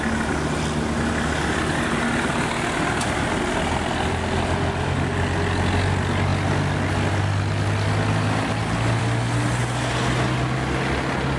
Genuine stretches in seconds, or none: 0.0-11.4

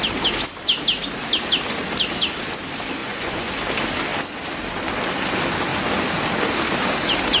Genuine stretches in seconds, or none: 0.0-3.0; 3.5-7.4